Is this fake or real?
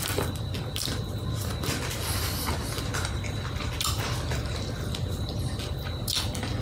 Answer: real